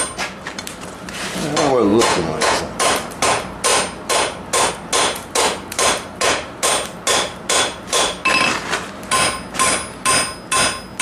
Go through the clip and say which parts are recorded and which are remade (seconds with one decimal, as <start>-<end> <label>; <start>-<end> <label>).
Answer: 0.0-1.9 recorded; 1.9-2.6 remade; 2.6-11.0 recorded